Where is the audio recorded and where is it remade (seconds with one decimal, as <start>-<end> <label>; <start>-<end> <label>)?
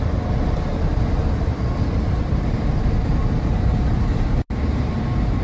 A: 0.0-0.7 recorded; 0.7-3.1 remade; 3.1-5.4 recorded